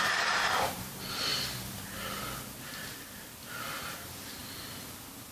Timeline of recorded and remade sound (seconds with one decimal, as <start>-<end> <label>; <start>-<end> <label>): 0.0-1.3 remade; 1.3-3.7 recorded; 3.7-4.4 remade; 4.4-5.3 recorded